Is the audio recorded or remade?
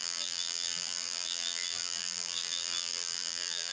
remade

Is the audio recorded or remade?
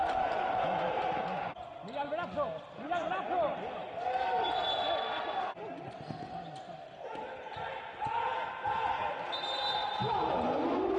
recorded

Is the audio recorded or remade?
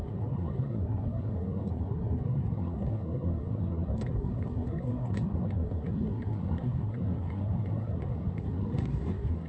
remade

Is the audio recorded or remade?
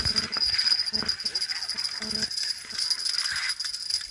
recorded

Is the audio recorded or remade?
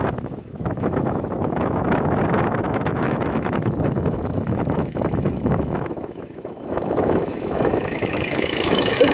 remade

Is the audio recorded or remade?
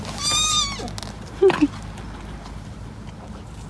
recorded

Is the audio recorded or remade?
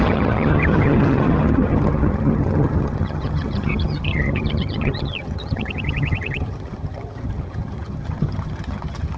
remade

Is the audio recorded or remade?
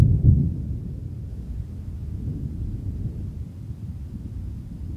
recorded